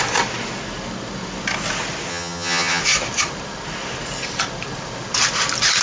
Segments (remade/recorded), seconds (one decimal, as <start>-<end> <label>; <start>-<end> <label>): 0.0-2.1 recorded; 2.1-2.8 remade; 2.8-5.8 recorded

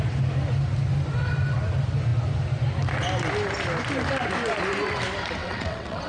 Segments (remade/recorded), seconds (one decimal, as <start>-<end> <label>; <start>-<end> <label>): 0.0-5.4 recorded; 5.4-6.1 remade

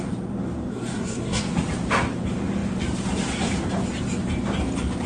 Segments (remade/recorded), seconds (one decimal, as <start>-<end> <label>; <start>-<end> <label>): 0.0-0.7 recorded; 0.7-1.4 remade; 1.4-5.1 recorded

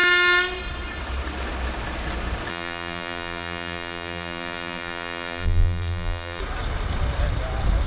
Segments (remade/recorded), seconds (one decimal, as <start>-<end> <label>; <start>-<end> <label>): 0.0-2.5 recorded; 2.5-6.4 remade; 6.4-7.9 recorded

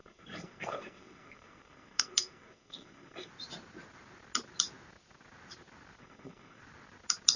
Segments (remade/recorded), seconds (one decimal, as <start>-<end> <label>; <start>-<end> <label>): 0.0-3.3 remade; 3.3-6.0 recorded; 6.0-6.6 remade; 6.6-7.4 recorded

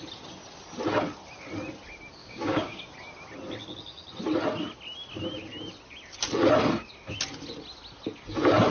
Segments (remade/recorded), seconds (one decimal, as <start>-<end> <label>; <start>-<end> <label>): 0.0-2.2 recorded; 2.2-2.8 remade; 2.8-8.7 recorded

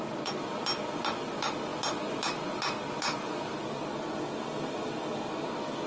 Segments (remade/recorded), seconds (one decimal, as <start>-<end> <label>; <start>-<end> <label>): 0.0-5.9 recorded